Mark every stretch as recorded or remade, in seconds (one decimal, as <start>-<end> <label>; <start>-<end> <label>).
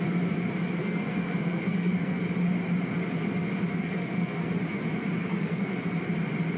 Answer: 0.0-0.8 recorded; 0.8-2.2 remade; 2.2-3.8 recorded; 3.8-4.6 remade; 4.6-5.2 recorded; 5.2-5.8 remade; 5.8-6.6 recorded